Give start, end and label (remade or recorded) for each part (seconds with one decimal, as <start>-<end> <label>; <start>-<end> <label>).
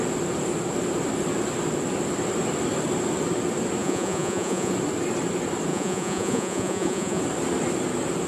0.0-3.8 recorded; 3.8-4.7 remade; 4.7-5.7 recorded; 5.7-7.2 remade; 7.2-8.3 recorded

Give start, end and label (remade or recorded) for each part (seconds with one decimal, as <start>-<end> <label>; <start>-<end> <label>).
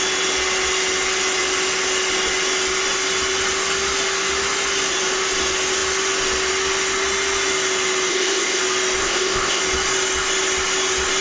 0.0-8.1 recorded; 8.1-8.6 remade; 8.6-9.0 recorded; 9.0-9.6 remade; 9.6-11.2 recorded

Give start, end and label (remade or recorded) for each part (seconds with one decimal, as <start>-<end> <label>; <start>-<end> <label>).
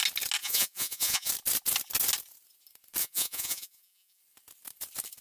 0.0-0.4 recorded; 0.4-1.3 remade; 1.3-3.0 recorded; 3.0-4.2 remade; 4.2-5.2 recorded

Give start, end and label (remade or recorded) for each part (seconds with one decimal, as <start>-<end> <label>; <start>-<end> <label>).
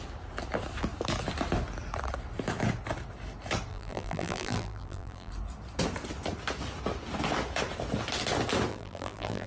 0.0-3.7 recorded; 3.7-5.3 remade; 5.3-8.7 recorded; 8.7-9.5 remade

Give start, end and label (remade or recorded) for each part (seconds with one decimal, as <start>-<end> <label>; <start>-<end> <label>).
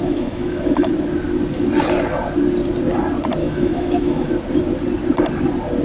0.0-0.9 remade; 0.9-3.4 recorded; 3.4-4.3 remade; 4.3-5.8 recorded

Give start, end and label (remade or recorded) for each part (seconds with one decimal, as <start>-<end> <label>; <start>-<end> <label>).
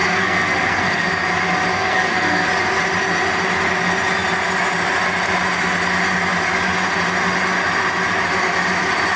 0.0-1.1 remade; 1.1-1.7 recorded; 1.7-2.5 remade; 2.5-9.2 recorded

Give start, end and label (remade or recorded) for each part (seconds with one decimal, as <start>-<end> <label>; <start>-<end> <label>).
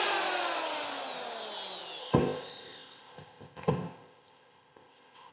0.0-2.0 recorded; 2.0-5.3 remade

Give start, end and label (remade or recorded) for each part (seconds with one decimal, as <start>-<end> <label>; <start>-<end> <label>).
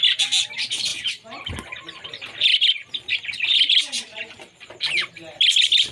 0.0-0.9 recorded; 0.9-1.5 remade; 1.5-2.5 recorded; 2.5-3.1 remade; 3.1-3.8 recorded; 3.8-4.7 remade; 4.7-5.9 recorded